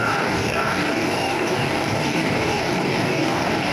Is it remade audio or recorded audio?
remade